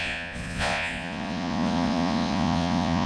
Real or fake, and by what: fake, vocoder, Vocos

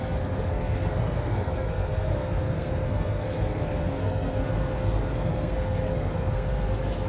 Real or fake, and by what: fake, codec, SNAC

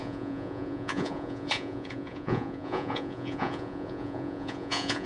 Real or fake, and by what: fake, vocoder, Vocos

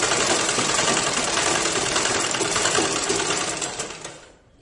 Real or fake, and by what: fake, vocoder, BigVGAN v2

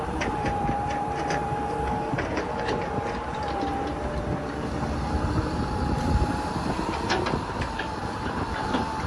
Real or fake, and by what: fake, vocoder, BigVGAN v2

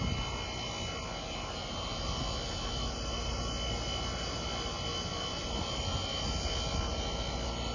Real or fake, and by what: real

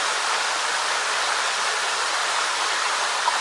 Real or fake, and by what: real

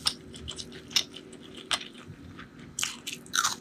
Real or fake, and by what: real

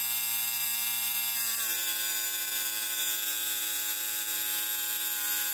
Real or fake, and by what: fake, vocoder, BigVGAN v2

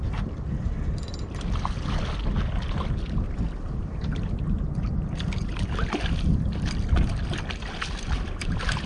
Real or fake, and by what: real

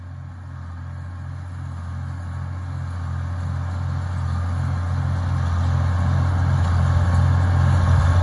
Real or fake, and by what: real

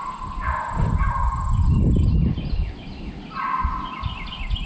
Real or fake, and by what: real